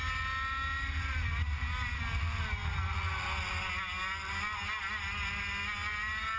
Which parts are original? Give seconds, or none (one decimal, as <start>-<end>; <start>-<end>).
0.0-6.4